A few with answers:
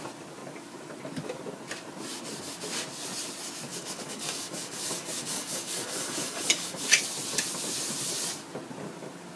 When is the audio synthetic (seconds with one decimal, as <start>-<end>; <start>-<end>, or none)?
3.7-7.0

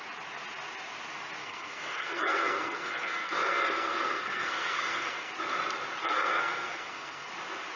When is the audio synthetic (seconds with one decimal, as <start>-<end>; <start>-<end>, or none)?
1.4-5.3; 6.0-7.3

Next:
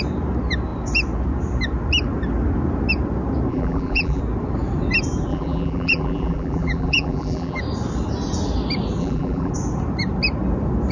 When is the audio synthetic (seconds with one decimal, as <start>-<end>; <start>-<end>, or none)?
3.5-4.2; 5.3-7.6; 9.0-9.5

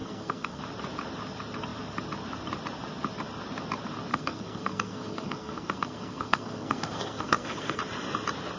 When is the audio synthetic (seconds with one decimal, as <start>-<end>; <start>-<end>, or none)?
0.0-0.6; 4.1-7.8

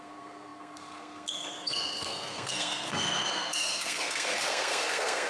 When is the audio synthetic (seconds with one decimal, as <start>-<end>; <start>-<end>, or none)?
0.0-5.3

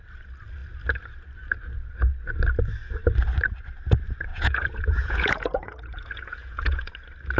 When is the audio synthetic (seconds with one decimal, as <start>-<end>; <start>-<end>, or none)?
4.3-6.9

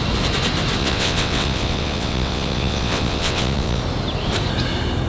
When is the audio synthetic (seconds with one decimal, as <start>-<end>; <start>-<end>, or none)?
0.8-3.8